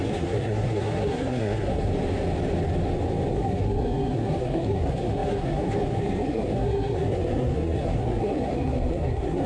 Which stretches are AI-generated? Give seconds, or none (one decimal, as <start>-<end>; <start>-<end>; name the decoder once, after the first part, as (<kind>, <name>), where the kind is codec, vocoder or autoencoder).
0.0-1.9 (codec, SNAC); 3.3-9.5